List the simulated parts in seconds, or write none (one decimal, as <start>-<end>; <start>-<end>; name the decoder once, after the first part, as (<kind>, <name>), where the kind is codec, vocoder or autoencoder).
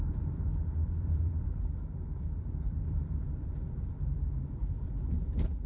0.0-4.6 (vocoder, BigVGAN v2)